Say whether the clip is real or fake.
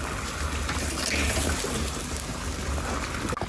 real